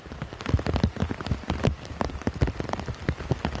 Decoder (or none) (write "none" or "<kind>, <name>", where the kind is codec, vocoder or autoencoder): none